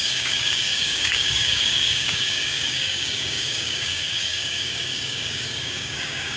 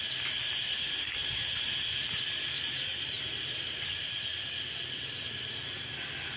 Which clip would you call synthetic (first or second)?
first